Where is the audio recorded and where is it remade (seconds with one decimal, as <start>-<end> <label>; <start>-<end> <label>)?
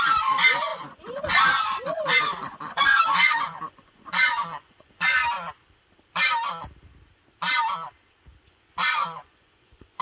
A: 0.0-5.2 remade; 5.2-8.5 recorded; 8.5-10.0 remade